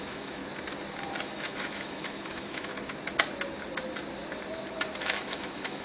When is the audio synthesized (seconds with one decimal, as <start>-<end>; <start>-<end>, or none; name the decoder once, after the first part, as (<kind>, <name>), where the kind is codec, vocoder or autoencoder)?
0.0-0.4 (autoencoder, DAC-VAE); 1.2-2.7; 5.0-5.8